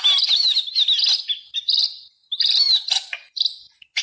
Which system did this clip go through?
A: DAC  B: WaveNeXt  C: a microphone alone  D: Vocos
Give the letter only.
C